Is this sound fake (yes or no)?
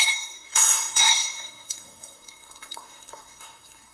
yes